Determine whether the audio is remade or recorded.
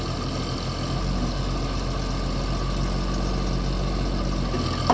recorded